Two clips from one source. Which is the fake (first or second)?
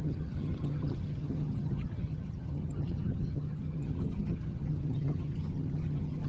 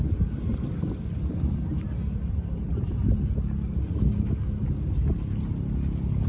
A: first